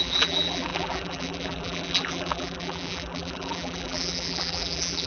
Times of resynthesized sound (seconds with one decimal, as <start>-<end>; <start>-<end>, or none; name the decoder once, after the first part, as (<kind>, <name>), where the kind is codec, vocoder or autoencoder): 0.0-5.1 (vocoder, BigVGAN v2)

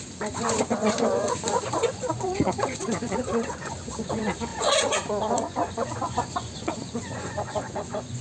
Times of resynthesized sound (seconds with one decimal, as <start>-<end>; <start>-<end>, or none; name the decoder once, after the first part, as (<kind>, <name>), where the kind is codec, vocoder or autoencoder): 0.0-8.2 (vocoder, Vocos)

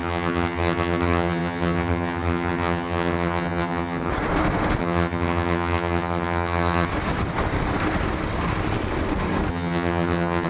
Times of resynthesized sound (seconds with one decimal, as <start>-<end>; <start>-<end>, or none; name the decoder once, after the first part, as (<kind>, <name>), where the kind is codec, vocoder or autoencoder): 0.0-4.1 (vocoder, HiFi-GAN); 4.8-6.9; 9.5-10.5

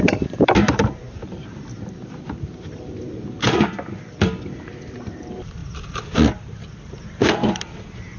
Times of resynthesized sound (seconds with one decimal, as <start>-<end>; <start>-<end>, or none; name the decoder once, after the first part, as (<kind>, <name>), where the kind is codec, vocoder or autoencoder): 0.0-1.7 (vocoder, BigVGAN v2); 5.1-5.6; 6.8-8.2

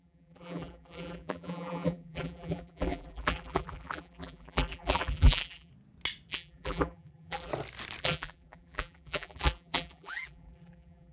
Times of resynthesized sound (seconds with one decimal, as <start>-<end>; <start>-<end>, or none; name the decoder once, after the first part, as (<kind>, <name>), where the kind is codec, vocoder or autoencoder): 0.0-5.7 (vocoder, BigVGAN v2); 6.3-7.5; 8.0-11.1

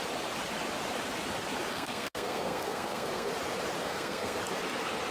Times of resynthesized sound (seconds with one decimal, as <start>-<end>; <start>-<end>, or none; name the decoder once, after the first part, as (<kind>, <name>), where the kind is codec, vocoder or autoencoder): 1.7-3.3 (codec, SNAC); 3.8-4.4

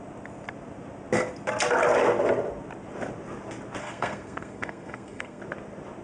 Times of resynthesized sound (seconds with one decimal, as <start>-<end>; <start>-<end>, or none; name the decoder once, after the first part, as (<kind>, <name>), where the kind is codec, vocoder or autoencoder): 3.8-5.4 (codec, SNAC)

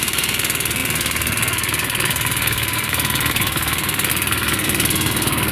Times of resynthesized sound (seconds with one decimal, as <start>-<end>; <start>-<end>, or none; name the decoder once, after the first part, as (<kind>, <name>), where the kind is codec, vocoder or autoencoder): 0.0-5.5 (codec, SNAC)